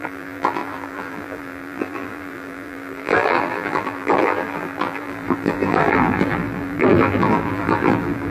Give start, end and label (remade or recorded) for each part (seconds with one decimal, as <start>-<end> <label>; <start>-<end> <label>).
0.0-8.3 remade